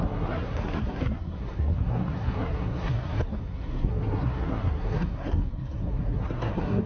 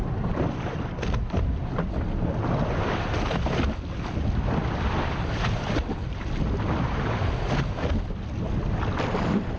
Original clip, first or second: second